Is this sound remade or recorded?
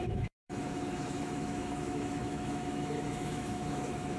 remade